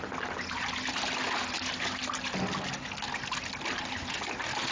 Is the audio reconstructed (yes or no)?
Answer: no